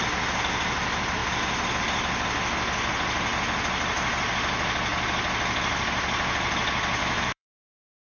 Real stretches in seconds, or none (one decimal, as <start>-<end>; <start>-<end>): 0.0-7.0

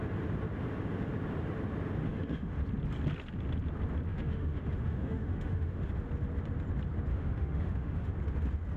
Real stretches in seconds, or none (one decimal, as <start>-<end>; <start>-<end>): 0.0-2.0; 2.6-4.1; 5.9-7.1; 8.1-8.8

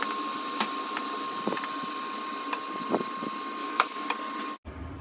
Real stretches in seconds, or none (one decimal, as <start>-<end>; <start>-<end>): 0.0-3.6; 4.1-5.0

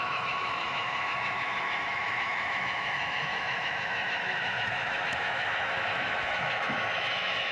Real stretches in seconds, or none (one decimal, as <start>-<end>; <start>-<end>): none

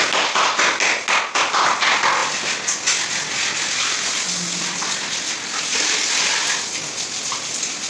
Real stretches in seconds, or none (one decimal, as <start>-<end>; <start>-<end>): 0.0-7.9

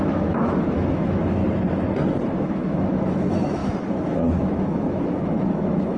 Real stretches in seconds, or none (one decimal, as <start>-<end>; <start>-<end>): 1.4-2.3